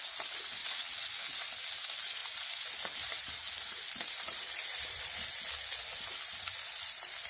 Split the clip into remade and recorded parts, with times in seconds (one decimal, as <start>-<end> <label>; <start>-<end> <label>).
0.0-0.6 recorded; 0.6-1.2 remade; 1.2-7.3 recorded